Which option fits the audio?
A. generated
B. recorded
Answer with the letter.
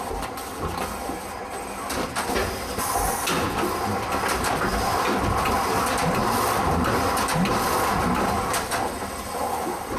B